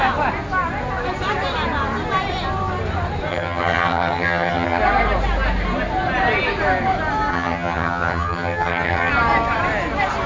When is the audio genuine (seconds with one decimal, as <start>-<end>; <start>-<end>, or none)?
0.0-3.3; 4.8-7.3; 9.1-10.3